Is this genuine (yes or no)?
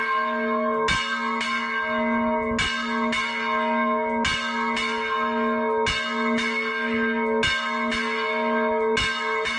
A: yes